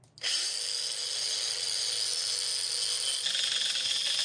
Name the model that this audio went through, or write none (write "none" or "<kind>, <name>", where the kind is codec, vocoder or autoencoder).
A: none